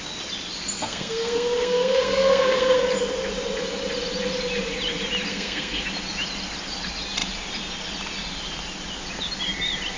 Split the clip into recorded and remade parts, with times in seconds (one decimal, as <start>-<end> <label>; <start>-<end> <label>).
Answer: 0.0-0.8 recorded; 0.8-2.8 remade; 2.8-5.3 recorded; 5.3-5.8 remade; 5.8-10.0 recorded